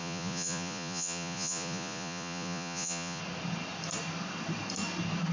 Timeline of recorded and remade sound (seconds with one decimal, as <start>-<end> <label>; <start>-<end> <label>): 0.0-3.2 remade; 3.2-5.3 recorded